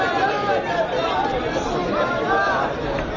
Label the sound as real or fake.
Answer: real